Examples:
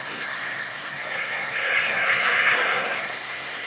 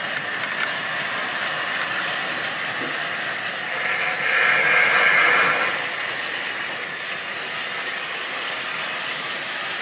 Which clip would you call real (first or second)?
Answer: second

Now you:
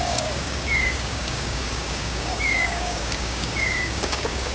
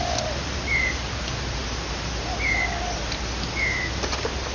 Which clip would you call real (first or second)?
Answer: second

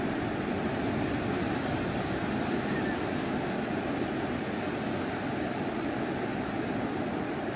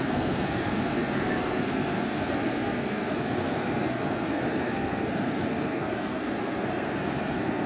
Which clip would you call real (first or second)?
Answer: first